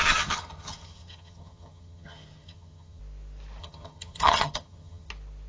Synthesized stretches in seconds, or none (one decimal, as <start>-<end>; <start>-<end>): 0.0-3.0; 3.6-5.1